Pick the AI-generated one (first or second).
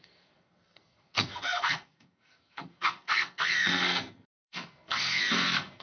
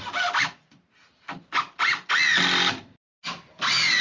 first